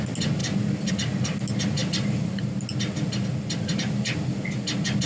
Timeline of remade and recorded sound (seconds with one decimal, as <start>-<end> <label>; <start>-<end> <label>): 0.0-5.1 recorded

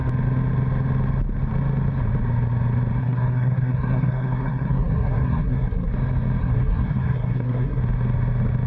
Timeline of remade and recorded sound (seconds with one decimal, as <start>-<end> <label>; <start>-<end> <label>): 0.0-3.0 recorded; 3.0-5.9 remade; 5.9-6.4 recorded; 6.4-7.8 remade; 7.8-8.7 recorded

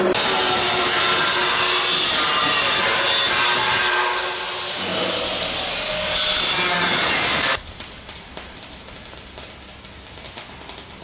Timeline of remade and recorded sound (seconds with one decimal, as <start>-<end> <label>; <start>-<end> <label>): 0.0-11.0 recorded

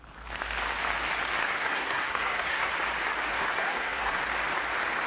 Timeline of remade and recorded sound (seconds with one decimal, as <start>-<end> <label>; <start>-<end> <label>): 0.0-1.4 recorded; 1.4-2.7 remade; 2.7-3.3 recorded; 3.3-4.2 remade; 4.2-5.1 recorded

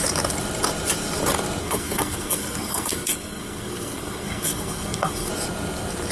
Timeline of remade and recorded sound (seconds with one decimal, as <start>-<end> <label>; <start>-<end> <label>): 0.0-1.6 recorded; 1.6-5.3 remade; 5.3-6.1 recorded

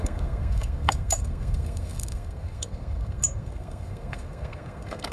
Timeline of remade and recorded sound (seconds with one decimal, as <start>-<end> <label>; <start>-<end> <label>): 0.0-5.1 remade